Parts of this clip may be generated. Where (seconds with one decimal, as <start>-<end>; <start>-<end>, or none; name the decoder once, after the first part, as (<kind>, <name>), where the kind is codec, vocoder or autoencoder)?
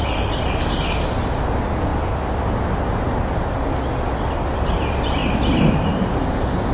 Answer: 5.2-5.8 (vocoder, BigVGAN v2)